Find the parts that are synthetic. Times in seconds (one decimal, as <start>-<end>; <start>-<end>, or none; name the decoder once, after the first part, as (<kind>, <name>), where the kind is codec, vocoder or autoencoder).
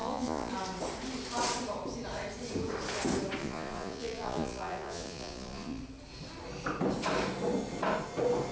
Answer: 0.0-0.5 (vocoder, Vocos); 3.4-5.8